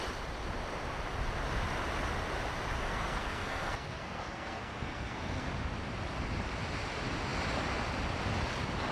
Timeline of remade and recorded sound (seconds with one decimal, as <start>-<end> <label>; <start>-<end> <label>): 0.0-2.8 recorded; 2.8-5.5 remade; 5.5-8.9 recorded

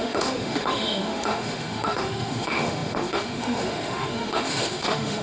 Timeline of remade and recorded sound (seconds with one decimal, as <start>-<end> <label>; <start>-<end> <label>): 0.0-5.2 remade

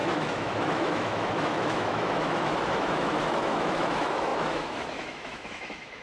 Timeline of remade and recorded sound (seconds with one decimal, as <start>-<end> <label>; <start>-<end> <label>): 0.0-6.0 remade

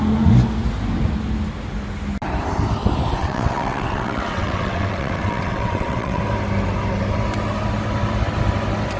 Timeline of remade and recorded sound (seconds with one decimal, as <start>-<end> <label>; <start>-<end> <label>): 0.0-3.2 recorded; 3.2-6.2 remade; 6.2-9.0 recorded

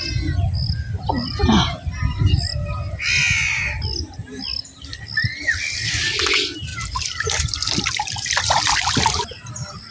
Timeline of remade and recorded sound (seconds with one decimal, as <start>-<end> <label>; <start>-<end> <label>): 0.0-6.7 recorded; 6.7-9.5 remade; 9.5-9.9 recorded